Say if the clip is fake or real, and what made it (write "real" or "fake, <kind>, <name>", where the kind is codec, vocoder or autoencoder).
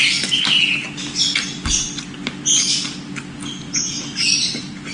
real